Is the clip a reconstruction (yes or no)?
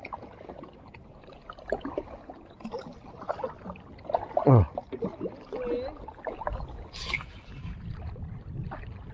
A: no